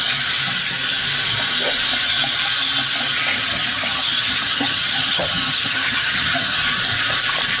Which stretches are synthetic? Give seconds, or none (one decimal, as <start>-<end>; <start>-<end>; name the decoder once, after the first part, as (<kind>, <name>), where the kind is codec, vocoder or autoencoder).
3.3-6.6 (vocoder, HiFi-GAN)